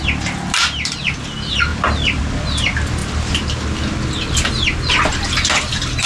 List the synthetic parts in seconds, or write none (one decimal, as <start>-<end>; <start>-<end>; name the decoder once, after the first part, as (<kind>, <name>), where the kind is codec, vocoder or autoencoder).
none